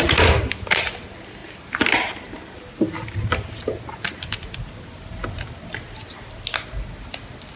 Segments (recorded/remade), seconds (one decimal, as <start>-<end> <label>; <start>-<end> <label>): 0.0-7.6 recorded